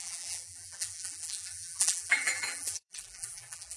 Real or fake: fake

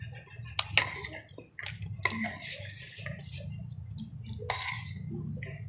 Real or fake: real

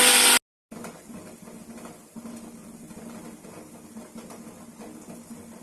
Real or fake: real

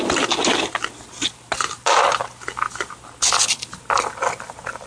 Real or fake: fake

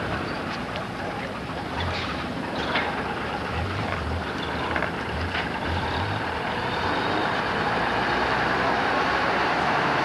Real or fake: fake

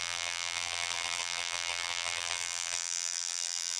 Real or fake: fake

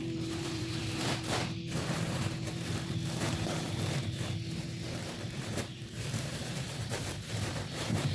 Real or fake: fake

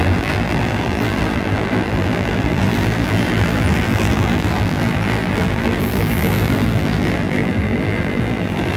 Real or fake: fake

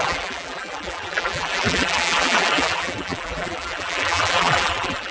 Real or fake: fake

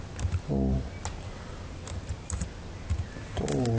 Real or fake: real